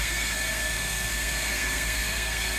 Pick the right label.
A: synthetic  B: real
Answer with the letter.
A